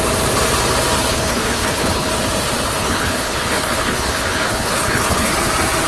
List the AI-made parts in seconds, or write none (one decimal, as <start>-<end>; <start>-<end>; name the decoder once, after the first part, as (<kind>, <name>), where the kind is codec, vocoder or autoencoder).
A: 1.1-2.1 (codec, HILCodec); 2.7-5.3